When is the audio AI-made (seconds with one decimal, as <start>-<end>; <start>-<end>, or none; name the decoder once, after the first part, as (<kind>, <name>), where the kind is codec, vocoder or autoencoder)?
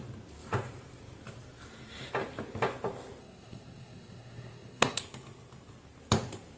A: 3.2-5.0 (codec, SNAC)